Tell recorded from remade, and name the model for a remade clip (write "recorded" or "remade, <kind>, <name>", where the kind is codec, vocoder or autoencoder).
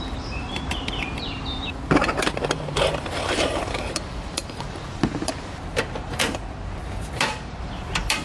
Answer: remade, vocoder, BigVGAN v2